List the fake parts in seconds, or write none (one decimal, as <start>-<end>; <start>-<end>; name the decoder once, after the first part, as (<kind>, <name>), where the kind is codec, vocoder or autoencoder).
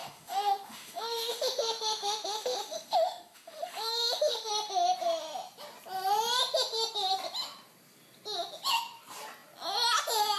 0.0-4.5 (autoencoder, DAC-VAE)